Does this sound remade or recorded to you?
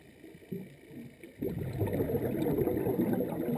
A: recorded